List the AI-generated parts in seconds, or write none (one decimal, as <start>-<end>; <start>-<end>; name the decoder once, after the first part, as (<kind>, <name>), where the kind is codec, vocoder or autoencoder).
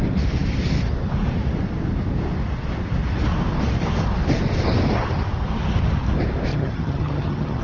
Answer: 6.5-7.6 (vocoder, HiFi-GAN)